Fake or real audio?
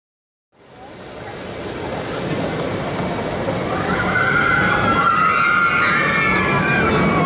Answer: real